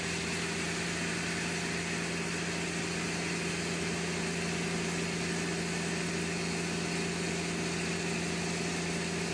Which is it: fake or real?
real